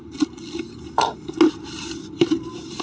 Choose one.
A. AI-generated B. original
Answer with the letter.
B